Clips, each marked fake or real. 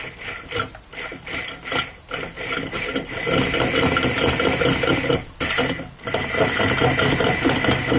real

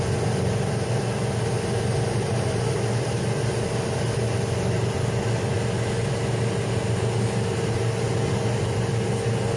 real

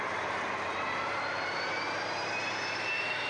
fake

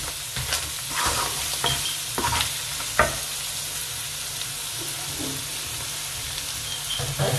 real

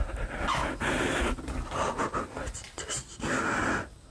real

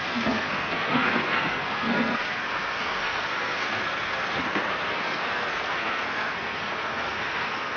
fake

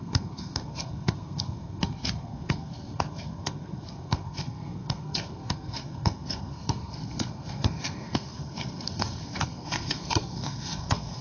fake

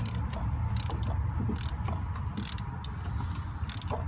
real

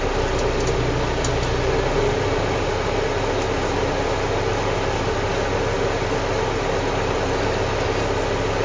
real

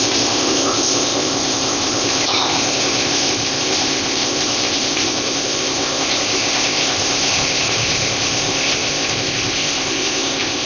fake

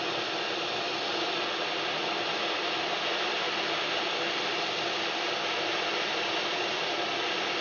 real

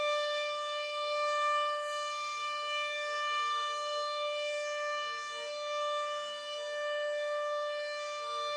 fake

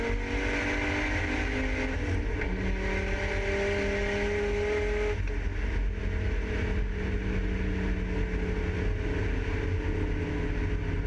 real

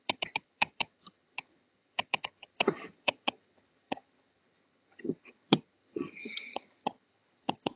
fake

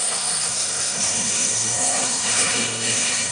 fake